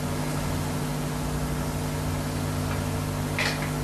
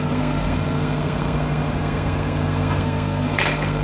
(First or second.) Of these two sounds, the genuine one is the first